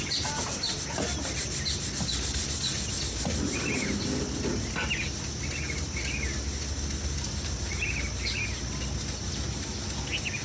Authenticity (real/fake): real